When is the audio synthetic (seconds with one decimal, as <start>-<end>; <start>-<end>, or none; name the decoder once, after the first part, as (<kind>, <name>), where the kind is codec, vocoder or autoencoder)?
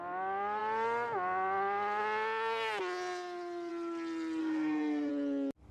4.4-5.1 (codec, SNAC)